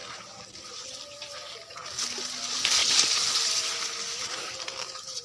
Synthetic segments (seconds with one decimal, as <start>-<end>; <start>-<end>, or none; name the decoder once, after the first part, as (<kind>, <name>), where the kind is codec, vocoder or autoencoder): 2.8-3.7 (vocoder, BigVGAN v2)

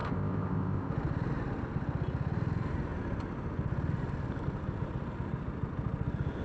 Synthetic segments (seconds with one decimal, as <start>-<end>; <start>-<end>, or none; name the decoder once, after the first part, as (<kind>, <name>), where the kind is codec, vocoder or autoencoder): 0.0-0.9 (codec, ZipCodec)

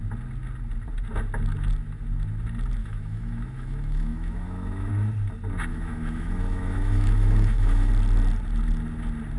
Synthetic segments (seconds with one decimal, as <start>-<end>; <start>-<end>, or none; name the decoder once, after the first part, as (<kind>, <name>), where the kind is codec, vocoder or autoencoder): 2.8-4.9 (autoencoder, DAC-VAE); 5.7-7.9

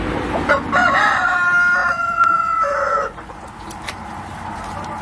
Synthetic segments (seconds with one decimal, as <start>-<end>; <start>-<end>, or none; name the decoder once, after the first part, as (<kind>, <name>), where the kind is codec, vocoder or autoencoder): 0.8-1.3 (vocoder, Vocos); 1.8-3.5

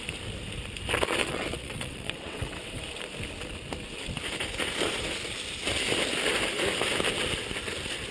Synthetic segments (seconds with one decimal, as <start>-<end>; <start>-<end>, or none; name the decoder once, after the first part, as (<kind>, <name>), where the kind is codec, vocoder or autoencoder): 1.2-2.8 (vocoder, WaveNeXt)

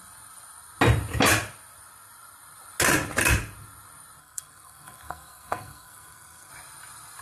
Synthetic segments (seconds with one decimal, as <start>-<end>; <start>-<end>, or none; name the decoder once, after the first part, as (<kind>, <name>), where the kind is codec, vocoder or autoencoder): 4.2-6.5 (codec, SNAC)

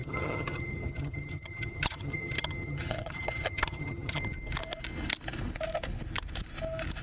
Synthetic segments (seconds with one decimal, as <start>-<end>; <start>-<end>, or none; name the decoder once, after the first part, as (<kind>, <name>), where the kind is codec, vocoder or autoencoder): 0.0-4.2 (vocoder, HiFi-GAN)

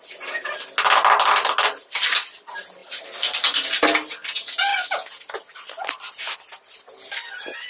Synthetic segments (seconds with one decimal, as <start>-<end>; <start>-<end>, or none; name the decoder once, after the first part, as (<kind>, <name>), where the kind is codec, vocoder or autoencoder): none